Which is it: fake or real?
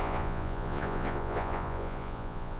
fake